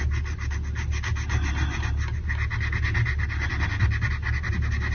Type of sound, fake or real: real